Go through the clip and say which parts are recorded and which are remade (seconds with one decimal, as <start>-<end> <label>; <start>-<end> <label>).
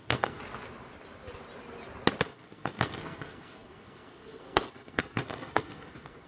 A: 0.0-0.4 remade; 0.4-2.2 recorded; 2.2-6.3 remade